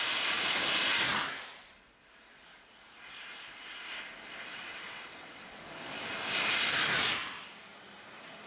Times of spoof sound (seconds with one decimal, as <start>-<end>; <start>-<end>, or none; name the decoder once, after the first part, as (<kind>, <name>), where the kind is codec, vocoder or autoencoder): 4.5-5.5 (vocoder, WaveNeXt)